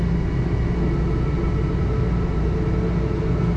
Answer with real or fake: real